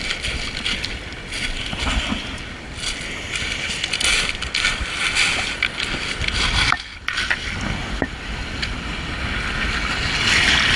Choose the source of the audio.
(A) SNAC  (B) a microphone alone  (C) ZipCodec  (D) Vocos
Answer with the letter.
B